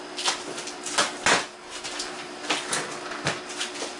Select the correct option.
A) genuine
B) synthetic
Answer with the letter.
A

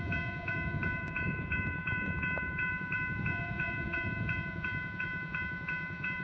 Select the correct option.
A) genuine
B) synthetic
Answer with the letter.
B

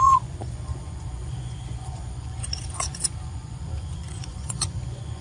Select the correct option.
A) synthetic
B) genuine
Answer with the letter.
A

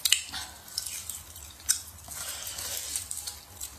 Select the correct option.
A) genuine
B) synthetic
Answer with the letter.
A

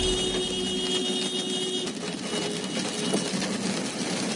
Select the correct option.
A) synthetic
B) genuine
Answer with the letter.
B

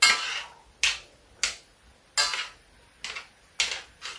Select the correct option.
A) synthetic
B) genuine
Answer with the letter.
B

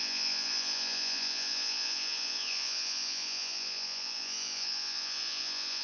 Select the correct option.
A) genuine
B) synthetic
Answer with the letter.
B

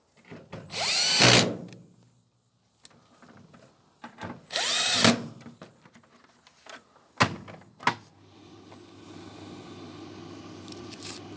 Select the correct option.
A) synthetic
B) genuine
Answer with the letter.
B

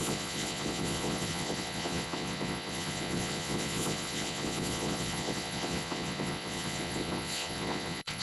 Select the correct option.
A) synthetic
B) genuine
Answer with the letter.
A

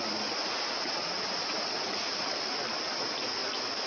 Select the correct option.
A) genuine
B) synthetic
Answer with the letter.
A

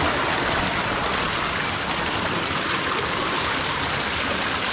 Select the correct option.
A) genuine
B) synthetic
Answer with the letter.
A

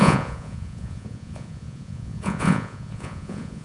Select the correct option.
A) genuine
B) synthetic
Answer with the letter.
B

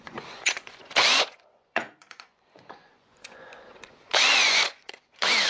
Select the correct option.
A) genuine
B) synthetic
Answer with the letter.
B